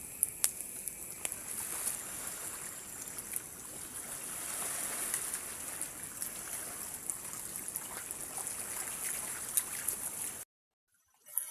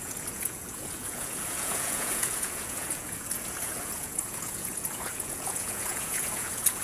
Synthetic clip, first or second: second